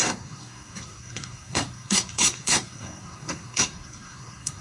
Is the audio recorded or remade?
remade